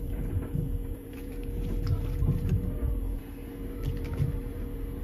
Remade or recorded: remade